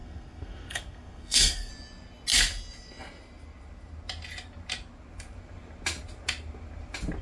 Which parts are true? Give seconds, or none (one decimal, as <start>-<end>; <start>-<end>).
1.7-7.2